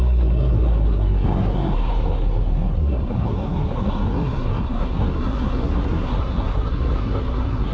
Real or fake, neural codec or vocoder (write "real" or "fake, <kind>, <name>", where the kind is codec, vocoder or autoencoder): fake, codec, SNAC